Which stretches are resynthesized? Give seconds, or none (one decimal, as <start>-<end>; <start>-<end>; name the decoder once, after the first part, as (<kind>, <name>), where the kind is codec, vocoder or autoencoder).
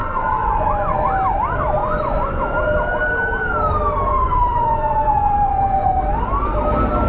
0.0-1.0 (vocoder, Vocos); 1.8-2.4; 4.1-6.0